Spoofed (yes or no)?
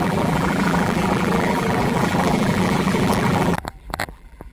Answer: yes